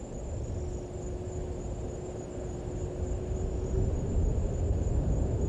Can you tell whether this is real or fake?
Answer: real